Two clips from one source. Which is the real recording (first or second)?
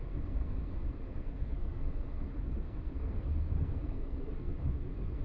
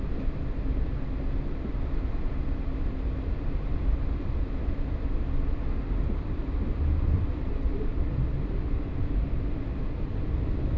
second